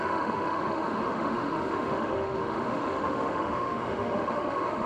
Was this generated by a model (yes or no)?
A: yes